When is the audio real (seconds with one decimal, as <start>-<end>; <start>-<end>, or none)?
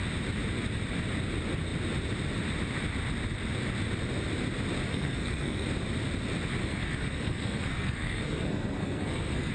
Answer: 0.0-4.9; 5.7-6.6